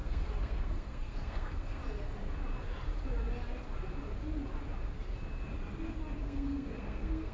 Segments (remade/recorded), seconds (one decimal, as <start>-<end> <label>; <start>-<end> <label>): 0.0-1.8 remade; 1.8-6.2 recorded; 6.2-7.3 remade